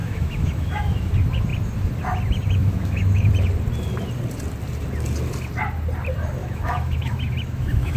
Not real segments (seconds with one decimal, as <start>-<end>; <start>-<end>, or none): 0.0-1.1; 2.6-3.3; 6.4-8.0